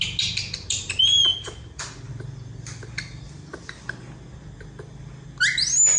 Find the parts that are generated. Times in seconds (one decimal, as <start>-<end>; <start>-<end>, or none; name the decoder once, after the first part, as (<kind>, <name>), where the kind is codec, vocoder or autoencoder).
none